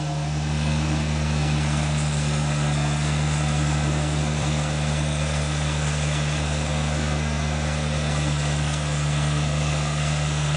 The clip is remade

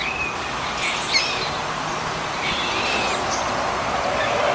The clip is recorded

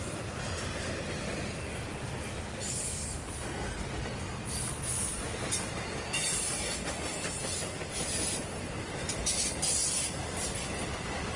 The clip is recorded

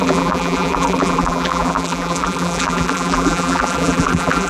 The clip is remade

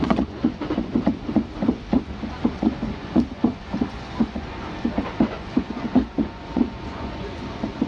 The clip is remade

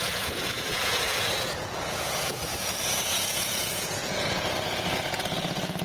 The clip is remade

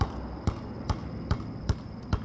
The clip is recorded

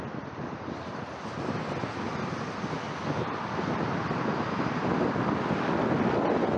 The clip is recorded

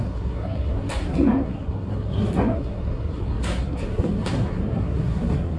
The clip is remade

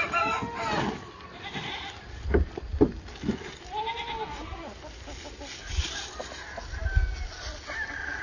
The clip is recorded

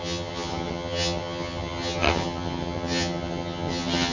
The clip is remade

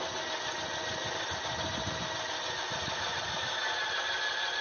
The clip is recorded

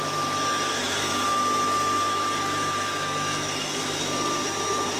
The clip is remade